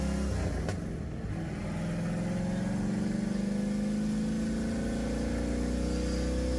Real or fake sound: real